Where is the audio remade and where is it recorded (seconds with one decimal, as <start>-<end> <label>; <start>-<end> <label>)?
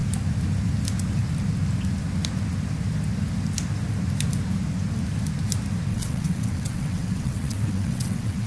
0.0-5.9 recorded; 5.9-8.5 remade